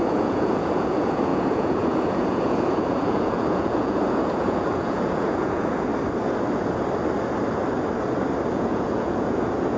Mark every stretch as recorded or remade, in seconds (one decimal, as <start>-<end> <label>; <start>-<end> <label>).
0.0-5.9 remade; 5.9-8.5 recorded; 8.5-9.8 remade

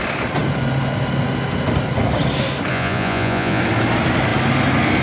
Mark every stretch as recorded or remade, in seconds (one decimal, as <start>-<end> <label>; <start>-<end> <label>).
0.0-2.7 recorded; 2.7-3.6 remade; 3.6-5.0 recorded

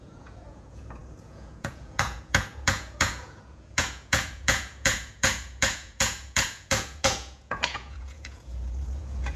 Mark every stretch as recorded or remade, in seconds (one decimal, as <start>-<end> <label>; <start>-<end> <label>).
0.0-9.4 remade

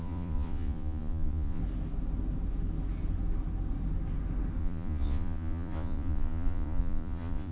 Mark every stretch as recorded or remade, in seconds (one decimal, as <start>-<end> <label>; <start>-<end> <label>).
0.0-1.6 remade; 1.6-4.6 recorded; 4.6-7.5 remade